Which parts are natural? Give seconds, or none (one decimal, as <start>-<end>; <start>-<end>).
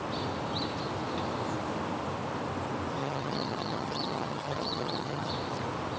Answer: 0.0-3.0; 5.3-6.0